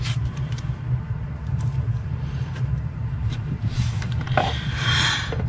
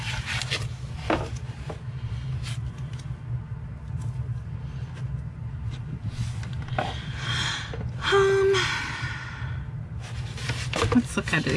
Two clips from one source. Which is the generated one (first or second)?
first